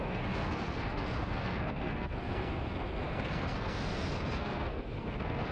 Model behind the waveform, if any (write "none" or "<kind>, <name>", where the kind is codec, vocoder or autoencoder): codec, SNAC